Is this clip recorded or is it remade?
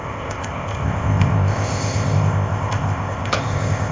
remade